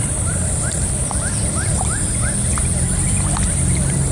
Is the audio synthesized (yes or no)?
no